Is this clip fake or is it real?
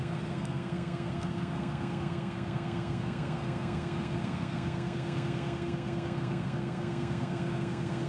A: fake